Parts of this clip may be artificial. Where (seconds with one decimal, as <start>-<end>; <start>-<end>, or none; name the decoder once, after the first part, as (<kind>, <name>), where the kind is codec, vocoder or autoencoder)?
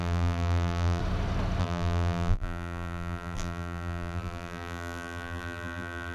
0.0-1.0 (vocoder, BigVGAN v2); 1.6-6.1